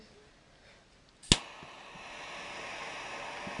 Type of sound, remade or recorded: recorded